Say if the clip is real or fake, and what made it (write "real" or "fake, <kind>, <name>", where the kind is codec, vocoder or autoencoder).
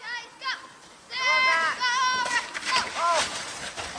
real